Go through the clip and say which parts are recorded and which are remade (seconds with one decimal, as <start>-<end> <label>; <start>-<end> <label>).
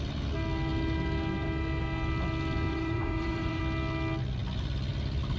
0.0-2.7 recorded; 2.7-3.6 remade; 3.6-5.4 recorded